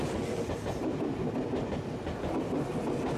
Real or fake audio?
real